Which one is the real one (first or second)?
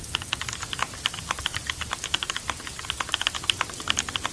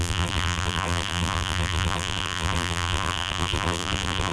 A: first